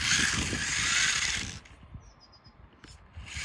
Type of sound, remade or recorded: recorded